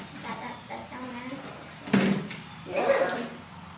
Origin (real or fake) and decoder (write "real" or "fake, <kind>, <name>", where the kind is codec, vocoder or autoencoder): real